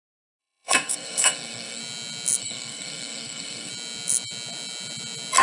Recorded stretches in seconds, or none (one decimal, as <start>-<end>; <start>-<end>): 0.0-0.4; 1.8-2.4; 3.7-5.4